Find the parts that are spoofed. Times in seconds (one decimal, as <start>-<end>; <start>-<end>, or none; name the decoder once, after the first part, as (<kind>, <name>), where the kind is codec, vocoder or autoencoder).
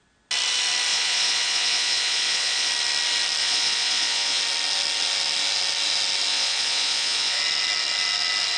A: 0.9-2.7 (vocoder, Vocos); 3.4-4.4; 6.3-7.4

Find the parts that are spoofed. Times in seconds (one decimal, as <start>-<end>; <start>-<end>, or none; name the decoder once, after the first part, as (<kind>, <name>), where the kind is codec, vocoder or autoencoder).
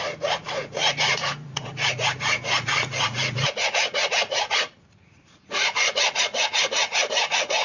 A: 0.0-7.6 (vocoder, Vocos)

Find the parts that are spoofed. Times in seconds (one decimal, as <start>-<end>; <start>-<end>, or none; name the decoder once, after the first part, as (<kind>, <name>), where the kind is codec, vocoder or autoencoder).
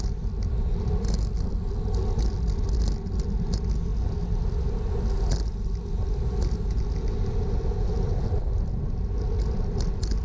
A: none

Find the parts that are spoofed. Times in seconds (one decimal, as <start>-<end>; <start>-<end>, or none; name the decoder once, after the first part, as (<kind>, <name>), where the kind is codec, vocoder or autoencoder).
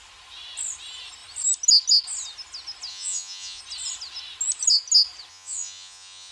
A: 2.9-3.6 (vocoder, Vocos); 5.3-6.3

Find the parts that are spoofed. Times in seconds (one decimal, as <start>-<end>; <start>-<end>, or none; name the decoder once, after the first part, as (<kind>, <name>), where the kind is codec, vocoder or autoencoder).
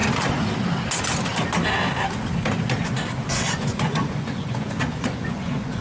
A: 3.5-5.8 (vocoder, Vocos)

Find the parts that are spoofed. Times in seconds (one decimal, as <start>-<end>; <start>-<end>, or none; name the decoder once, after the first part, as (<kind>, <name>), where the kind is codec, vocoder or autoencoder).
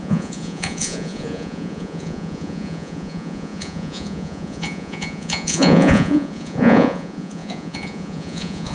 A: 0.0-8.7 (vocoder, Vocos)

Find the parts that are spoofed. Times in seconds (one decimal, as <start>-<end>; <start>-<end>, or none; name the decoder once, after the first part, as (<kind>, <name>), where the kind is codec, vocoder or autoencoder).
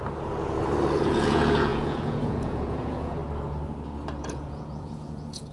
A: 1.0-3.2 (vocoder, Vocos); 4.2-5.5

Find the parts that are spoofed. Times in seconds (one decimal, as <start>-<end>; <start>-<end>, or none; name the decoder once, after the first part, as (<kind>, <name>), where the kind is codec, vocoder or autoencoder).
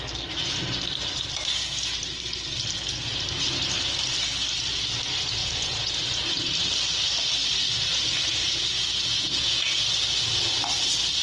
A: 5.4-6.4 (vocoder, Vocos); 8.4-9.9